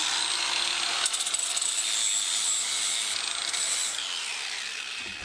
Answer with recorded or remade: recorded